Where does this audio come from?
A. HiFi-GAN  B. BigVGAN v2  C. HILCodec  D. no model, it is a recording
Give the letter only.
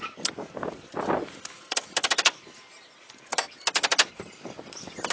D